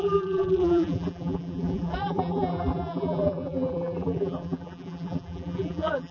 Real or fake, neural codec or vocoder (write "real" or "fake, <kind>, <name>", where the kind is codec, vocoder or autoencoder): fake, vocoder, BigVGAN v2